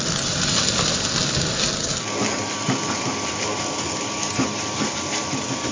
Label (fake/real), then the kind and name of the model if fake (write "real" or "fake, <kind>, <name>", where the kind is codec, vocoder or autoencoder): real